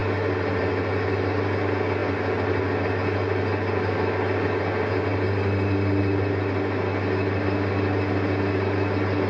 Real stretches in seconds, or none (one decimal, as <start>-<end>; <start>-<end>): 0.0-9.3